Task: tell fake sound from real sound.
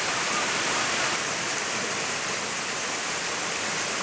fake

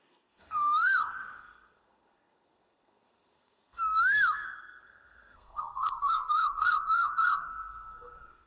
fake